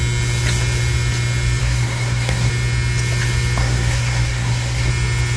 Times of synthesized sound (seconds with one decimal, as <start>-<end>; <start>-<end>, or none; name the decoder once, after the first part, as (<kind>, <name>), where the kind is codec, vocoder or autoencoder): 1.6-2.5 (codec, SNAC); 3.6-4.9